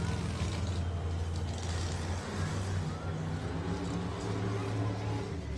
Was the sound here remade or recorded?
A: recorded